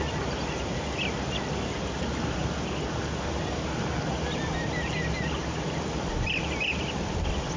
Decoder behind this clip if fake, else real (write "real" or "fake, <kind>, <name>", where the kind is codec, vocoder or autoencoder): real